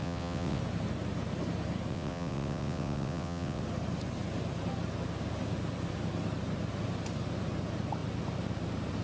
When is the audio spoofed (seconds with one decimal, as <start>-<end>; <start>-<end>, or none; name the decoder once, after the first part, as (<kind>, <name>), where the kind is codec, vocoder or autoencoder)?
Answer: 0.0-0.6 (vocoder, WaveNeXt); 1.9-3.6